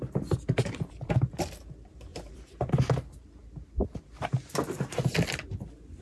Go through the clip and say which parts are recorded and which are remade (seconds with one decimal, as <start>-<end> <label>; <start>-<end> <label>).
0.0-2.1 recorded; 2.1-2.7 remade; 2.7-6.0 recorded